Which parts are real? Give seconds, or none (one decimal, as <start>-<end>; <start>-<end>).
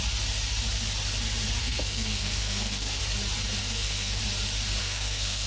0.0-1.6; 3.0-3.6; 4.2-4.8